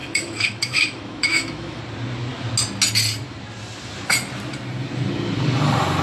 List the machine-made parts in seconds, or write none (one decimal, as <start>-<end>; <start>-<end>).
0.0-1.8